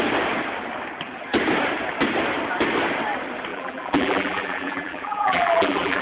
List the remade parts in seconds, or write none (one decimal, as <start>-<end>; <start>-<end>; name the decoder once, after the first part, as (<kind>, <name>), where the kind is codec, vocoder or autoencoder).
3.5-6.0 (vocoder, BigVGAN v2)